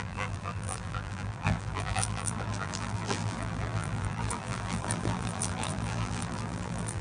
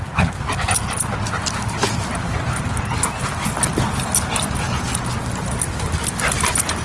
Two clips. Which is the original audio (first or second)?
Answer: second